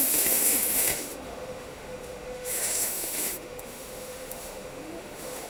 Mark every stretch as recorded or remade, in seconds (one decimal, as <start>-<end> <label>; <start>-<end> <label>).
0.0-5.5 remade